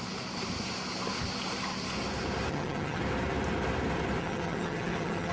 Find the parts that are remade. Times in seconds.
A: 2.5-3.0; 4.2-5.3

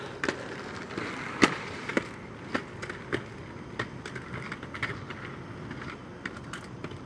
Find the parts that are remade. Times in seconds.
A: 0.0-1.9; 4.5-7.1

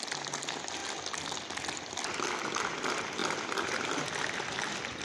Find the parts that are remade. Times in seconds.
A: none

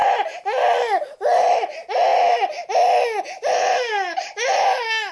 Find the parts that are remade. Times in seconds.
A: none